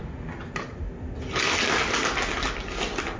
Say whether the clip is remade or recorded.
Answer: recorded